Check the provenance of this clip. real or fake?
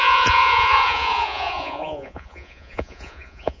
fake